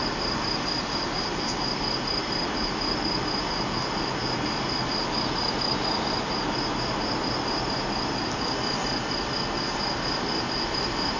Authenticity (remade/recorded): recorded